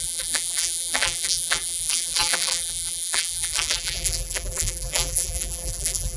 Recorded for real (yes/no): no